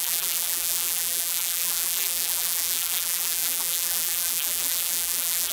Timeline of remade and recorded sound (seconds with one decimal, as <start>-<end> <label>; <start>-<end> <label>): 0.0-5.5 remade